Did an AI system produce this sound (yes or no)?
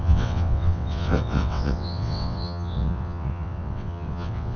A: yes